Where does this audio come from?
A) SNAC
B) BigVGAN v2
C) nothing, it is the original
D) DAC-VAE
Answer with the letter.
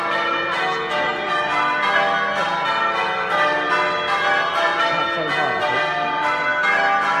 C